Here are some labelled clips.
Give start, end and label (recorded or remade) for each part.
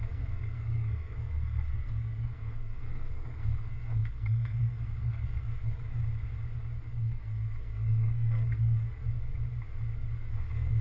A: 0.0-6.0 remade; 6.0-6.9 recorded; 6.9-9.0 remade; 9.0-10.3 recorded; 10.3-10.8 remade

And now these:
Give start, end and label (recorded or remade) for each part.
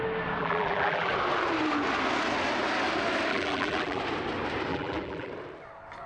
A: 0.0-0.4 recorded; 0.4-1.1 remade; 1.1-3.3 recorded; 3.3-4.0 remade; 4.0-4.7 recorded; 4.7-5.3 remade; 5.3-6.1 recorded